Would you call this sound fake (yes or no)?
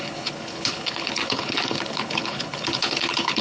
yes